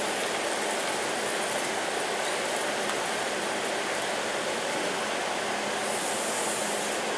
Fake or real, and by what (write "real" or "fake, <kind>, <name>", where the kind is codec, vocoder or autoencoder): real